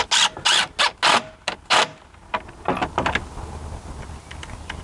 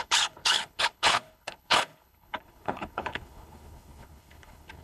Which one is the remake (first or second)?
second